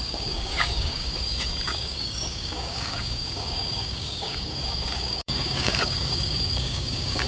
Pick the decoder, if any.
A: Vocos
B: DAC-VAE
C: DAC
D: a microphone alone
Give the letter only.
C